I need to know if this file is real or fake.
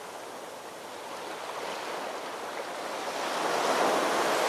real